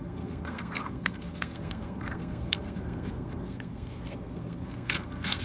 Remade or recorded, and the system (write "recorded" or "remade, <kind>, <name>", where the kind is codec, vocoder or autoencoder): remade, codec, SNAC